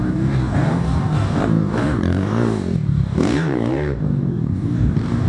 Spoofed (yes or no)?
yes